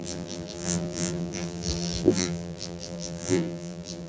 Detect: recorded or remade remade